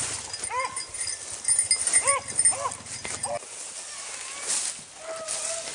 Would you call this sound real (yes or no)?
yes